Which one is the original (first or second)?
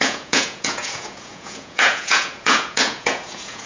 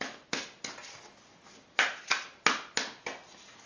second